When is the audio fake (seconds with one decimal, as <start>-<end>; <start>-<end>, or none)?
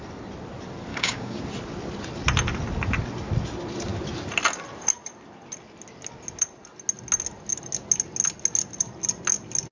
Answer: 0.9-1.4